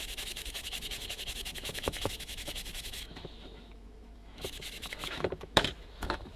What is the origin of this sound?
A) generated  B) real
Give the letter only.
A